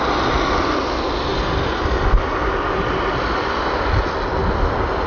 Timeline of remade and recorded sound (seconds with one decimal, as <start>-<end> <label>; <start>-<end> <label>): 0.0-5.1 recorded